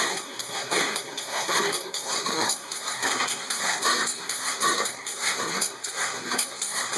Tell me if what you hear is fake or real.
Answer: fake